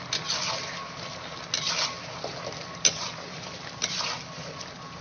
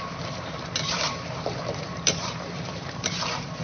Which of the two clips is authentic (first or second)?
first